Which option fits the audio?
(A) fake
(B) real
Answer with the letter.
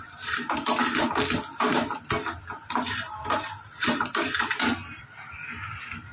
B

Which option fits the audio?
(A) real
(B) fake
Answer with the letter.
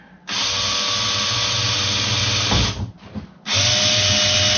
A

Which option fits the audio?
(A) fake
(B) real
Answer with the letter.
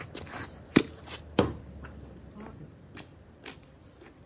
B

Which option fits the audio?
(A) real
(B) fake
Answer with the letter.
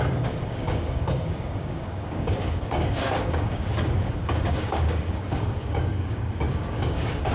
B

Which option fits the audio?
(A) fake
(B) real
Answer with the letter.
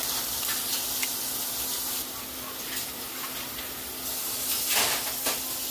B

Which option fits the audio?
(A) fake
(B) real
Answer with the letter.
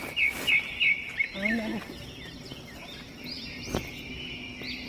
B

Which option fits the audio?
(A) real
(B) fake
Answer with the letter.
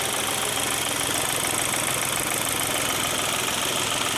A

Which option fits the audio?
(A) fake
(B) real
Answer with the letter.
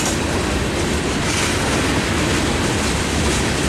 B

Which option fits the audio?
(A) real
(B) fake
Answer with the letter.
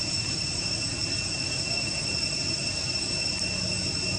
A